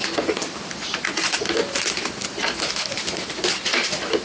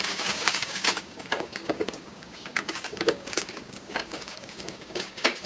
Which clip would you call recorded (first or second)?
first